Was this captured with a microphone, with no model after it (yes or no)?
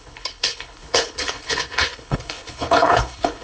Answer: no